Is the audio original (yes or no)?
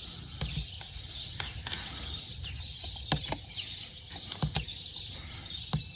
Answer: yes